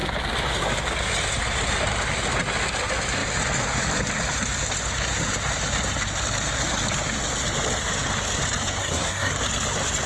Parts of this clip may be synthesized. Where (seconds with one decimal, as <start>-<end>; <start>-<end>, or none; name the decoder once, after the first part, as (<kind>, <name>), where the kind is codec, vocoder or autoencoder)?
8.8-9.3 (codec, SNAC)